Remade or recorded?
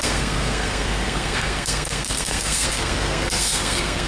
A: remade